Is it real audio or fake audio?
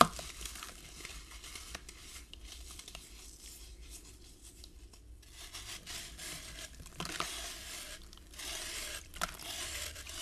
fake